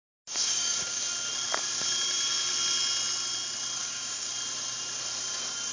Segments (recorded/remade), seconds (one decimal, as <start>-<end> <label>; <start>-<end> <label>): 0.0-0.4 recorded; 0.4-1.0 remade; 1.0-3.8 recorded; 3.8-4.3 remade; 4.3-5.7 recorded